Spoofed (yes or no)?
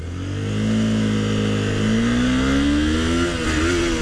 no